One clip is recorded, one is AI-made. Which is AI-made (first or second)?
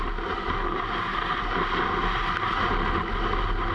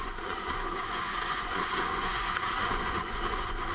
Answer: second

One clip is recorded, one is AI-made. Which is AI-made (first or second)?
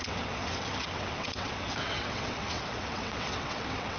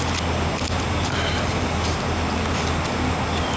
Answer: first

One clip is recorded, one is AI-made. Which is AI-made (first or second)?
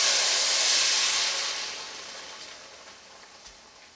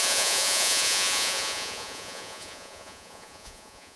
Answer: second